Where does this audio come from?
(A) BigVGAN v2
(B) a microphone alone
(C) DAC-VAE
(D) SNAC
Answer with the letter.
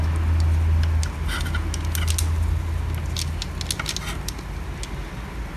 B